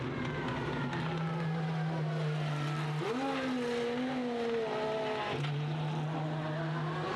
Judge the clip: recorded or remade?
recorded